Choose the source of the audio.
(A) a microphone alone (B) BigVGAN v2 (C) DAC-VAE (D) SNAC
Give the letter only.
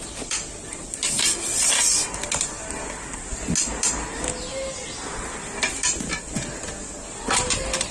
A